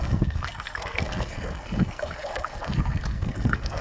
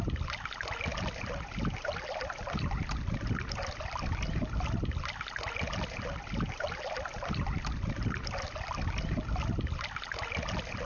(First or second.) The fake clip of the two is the first